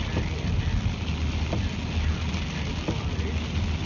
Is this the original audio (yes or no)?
yes